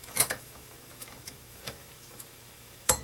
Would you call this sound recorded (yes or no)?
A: no